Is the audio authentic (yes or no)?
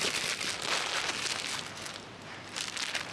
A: yes